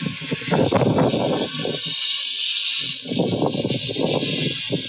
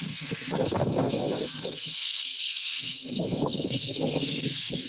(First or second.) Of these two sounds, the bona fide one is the first